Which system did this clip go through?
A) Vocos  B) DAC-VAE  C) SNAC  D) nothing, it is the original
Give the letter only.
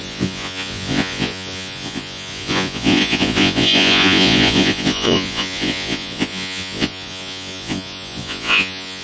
A